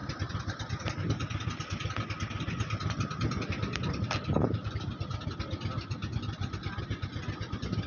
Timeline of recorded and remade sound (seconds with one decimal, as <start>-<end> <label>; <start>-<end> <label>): 0.0-7.9 recorded